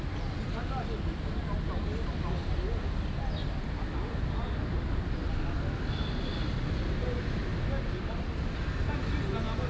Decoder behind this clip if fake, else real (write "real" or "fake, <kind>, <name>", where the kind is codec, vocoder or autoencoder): real